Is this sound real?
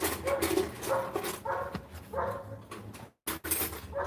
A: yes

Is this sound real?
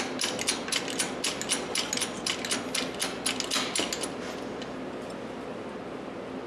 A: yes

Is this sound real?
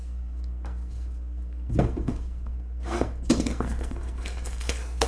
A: no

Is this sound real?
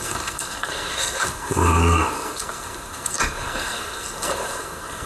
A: no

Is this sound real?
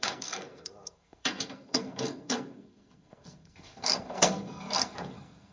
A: no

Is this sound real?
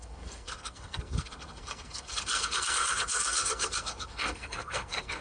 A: no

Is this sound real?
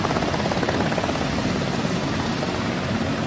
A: yes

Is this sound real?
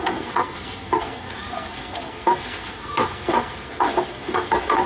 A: no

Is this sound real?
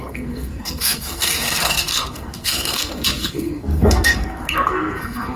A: no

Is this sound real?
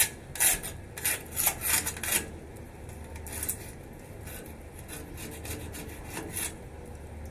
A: yes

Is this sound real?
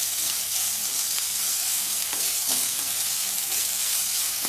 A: no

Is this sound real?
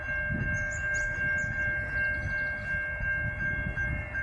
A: yes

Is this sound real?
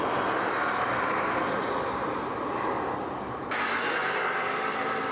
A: yes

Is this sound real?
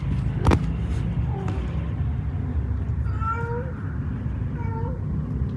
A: yes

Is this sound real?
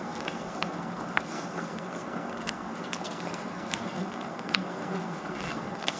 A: no